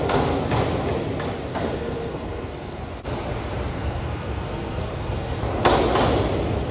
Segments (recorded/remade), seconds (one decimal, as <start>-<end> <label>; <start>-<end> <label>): 0.0-1.5 recorded; 1.5-2.8 remade; 2.8-3.7 recorded; 3.7-5.4 remade; 5.4-6.7 recorded